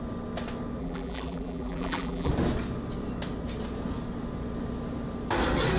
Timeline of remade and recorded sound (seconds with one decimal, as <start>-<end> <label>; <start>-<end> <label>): 0.0-0.8 recorded; 0.8-2.3 remade; 2.3-5.8 recorded